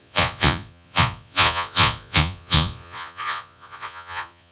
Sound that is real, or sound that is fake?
fake